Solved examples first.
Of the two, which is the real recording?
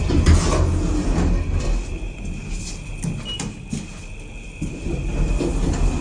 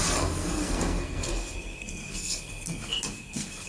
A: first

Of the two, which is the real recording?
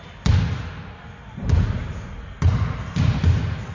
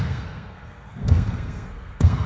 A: first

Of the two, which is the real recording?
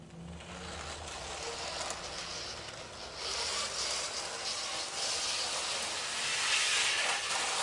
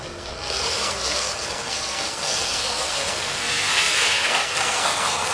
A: first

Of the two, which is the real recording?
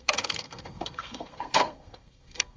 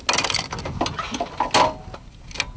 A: second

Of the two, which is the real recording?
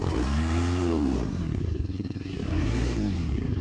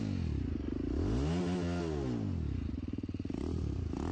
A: second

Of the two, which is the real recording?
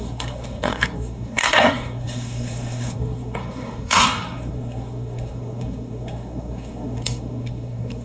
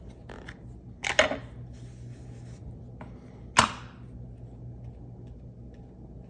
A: second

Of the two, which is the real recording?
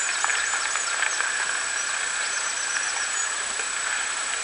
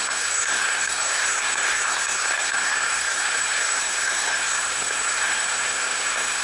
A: first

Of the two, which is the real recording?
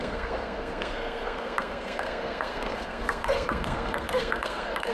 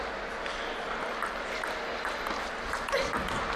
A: second